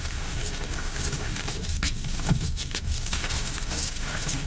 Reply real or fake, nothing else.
fake